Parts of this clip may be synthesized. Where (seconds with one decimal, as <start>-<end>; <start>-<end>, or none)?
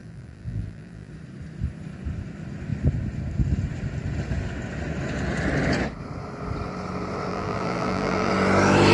0.0-1.1; 7.3-8.3